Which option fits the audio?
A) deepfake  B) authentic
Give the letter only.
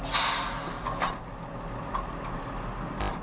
B